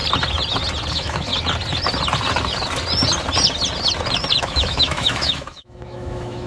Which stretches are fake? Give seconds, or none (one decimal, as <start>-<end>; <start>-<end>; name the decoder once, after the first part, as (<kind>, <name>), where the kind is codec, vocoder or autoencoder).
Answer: 0.9-1.3 (autoencoder, DAC-VAE); 4.4-6.5